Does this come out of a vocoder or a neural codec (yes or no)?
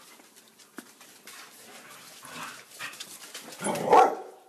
no